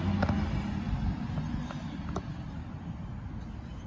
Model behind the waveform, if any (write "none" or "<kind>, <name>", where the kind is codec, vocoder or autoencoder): none